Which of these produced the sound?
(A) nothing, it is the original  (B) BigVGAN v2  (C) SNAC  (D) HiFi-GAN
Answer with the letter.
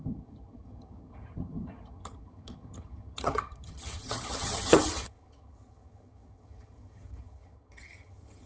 D